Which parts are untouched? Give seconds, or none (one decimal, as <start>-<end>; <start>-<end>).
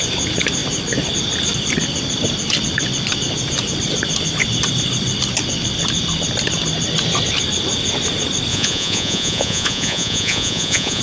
0.0-8.5